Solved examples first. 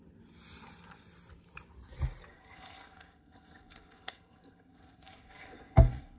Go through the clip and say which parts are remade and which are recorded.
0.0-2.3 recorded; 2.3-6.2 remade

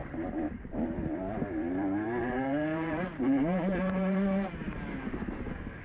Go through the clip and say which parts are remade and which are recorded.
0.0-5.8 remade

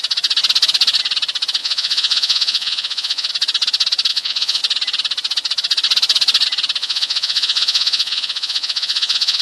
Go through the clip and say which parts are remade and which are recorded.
0.0-1.6 recorded; 1.6-3.3 remade; 3.3-4.1 recorded; 4.1-4.6 remade; 4.6-6.8 recorded; 6.8-9.4 remade